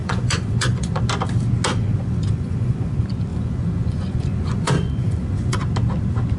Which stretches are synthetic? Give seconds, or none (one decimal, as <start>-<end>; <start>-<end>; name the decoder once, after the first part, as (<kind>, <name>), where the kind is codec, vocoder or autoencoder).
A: 0.0-1.0 (vocoder, Vocos); 1.7-2.8; 3.3-5.6